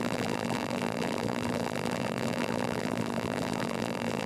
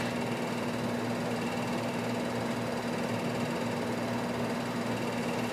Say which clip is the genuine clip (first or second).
second